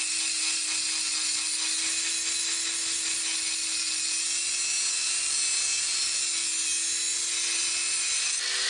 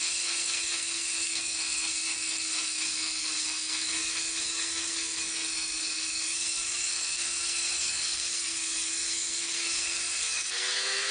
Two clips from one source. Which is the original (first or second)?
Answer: first